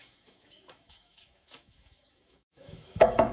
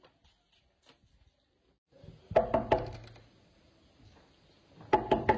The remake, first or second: first